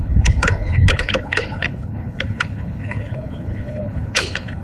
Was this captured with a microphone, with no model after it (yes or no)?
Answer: no